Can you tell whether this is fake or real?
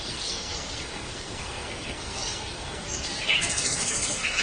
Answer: fake